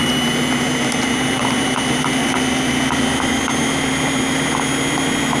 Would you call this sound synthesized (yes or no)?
no